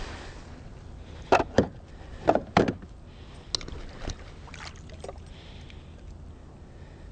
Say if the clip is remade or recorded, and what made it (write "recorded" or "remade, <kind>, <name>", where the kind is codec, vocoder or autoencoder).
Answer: recorded